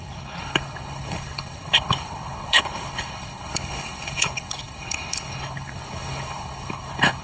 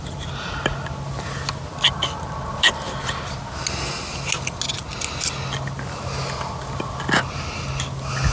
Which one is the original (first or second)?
second